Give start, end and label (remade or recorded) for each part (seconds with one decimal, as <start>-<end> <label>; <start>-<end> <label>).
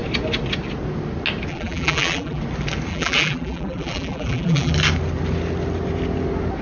0.0-1.5 recorded; 1.5-2.4 remade; 2.4-2.9 recorded; 2.9-4.7 remade; 4.7-6.6 recorded